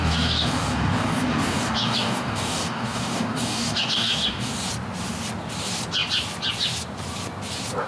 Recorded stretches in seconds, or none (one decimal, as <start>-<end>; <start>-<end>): 4.5-7.9